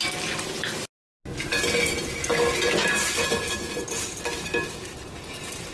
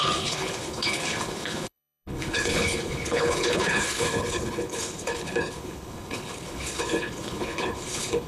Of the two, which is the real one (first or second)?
first